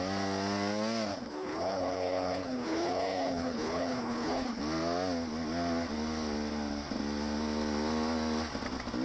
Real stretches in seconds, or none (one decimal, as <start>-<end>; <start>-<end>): 0.0-1.1; 4.6-9.0